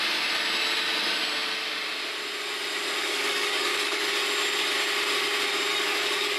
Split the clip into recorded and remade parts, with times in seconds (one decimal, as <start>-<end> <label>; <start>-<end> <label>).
0.0-3.0 recorded; 3.0-4.1 remade; 4.1-5.7 recorded; 5.7-6.4 remade